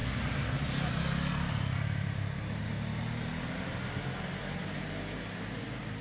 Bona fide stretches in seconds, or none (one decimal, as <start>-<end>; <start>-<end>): 0.0-6.0